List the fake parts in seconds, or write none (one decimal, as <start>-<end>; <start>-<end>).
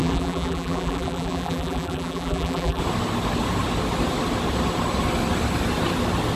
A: 0.0-2.8